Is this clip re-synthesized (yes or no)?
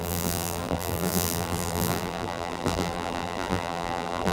yes